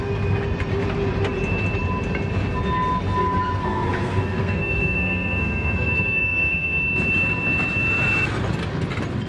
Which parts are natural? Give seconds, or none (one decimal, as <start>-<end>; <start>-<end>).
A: 0.0-3.6; 6.8-9.3